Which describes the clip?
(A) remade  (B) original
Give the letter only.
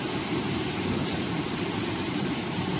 A